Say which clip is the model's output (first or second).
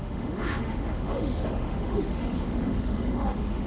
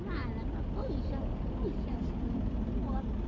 first